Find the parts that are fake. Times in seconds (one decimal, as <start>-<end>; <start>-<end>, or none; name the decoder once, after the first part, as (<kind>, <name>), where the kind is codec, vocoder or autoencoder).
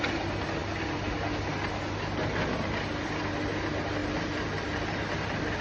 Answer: 4.0-5.6 (vocoder, BigVGAN v2)